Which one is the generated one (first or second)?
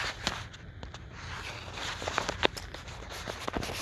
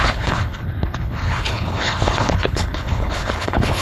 second